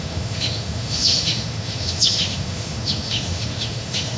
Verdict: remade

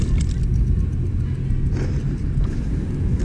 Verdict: recorded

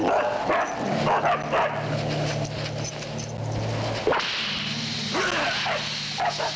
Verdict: recorded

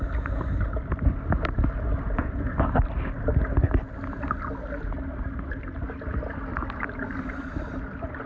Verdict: recorded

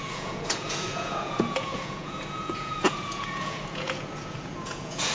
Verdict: remade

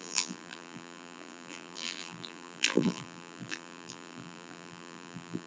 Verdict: remade